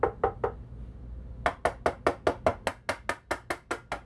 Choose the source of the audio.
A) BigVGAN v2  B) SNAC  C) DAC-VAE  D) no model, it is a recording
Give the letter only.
D